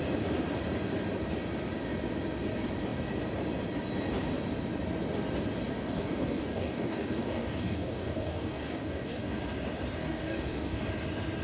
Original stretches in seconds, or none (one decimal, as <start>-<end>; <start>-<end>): 0.0-5.7; 9.4-10.0; 10.8-11.4